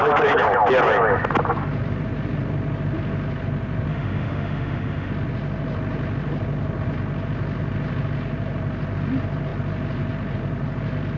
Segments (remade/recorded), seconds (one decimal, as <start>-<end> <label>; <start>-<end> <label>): 0.0-3.9 recorded; 3.9-5.1 remade; 5.1-11.2 recorded